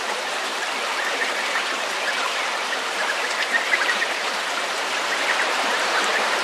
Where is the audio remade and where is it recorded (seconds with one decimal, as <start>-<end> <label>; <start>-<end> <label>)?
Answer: 0.0-0.5 remade; 0.5-1.5 recorded; 1.5-6.4 remade